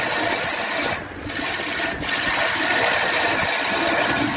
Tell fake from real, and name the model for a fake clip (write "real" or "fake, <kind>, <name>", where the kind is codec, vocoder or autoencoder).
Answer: real